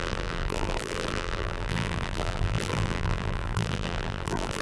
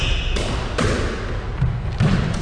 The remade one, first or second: first